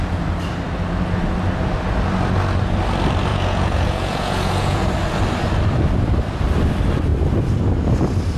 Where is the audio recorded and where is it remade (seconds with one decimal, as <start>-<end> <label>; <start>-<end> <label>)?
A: 0.0-3.3 recorded; 3.3-4.8 remade; 4.8-8.4 recorded